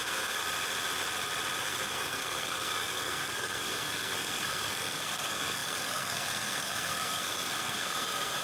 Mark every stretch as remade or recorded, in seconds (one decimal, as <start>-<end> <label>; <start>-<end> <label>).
0.0-0.4 remade; 0.4-1.6 recorded; 1.6-8.4 remade